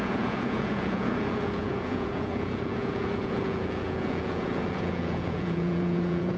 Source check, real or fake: fake